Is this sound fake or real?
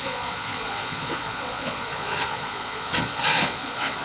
fake